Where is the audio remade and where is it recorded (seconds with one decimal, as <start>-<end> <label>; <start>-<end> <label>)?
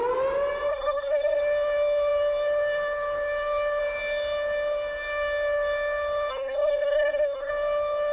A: 0.0-0.7 recorded; 0.7-1.4 remade; 1.4-6.3 recorded; 6.3-7.5 remade; 7.5-8.1 recorded